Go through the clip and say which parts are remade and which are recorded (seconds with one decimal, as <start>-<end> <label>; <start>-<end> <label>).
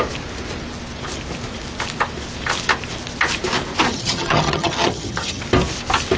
0.0-3.9 recorded; 3.9-5.4 remade; 5.4-6.2 recorded